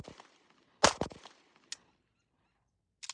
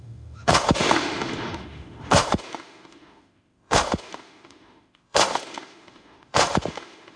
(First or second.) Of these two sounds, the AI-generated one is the second